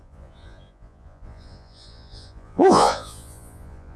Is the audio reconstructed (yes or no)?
yes